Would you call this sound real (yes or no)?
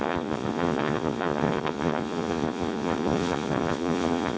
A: no